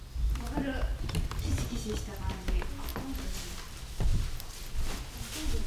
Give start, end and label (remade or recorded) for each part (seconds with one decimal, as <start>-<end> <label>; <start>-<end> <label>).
0.0-0.9 recorded; 0.9-1.4 remade; 1.4-4.1 recorded; 4.1-5.2 remade; 5.2-5.7 recorded